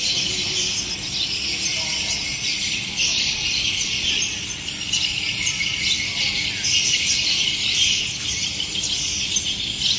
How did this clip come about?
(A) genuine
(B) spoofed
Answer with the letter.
A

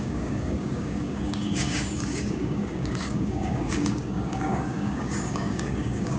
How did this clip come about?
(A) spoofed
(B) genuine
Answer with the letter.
A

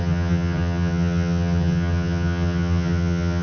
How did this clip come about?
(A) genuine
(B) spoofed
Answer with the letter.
B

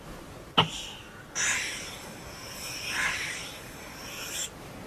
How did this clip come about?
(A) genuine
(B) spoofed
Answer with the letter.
A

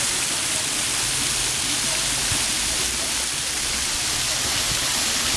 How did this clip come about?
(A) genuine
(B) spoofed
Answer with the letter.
A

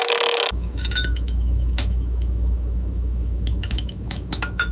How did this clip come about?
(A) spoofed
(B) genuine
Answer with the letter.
A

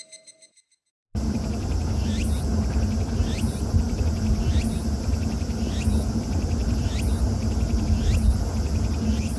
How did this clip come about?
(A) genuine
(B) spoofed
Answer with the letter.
A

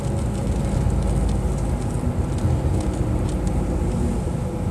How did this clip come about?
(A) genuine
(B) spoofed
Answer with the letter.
A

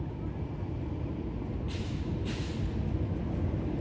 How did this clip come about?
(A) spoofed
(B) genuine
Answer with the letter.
B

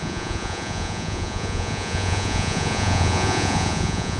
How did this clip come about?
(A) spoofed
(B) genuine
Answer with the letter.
A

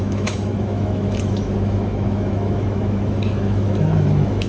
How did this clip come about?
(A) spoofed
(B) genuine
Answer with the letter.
A